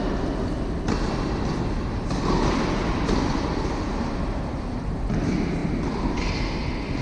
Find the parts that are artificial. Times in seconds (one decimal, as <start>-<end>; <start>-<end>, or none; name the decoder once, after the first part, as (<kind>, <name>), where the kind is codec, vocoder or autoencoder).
none